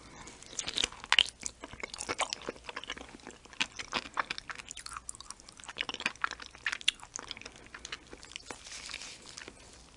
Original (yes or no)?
yes